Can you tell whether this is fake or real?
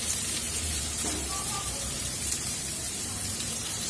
fake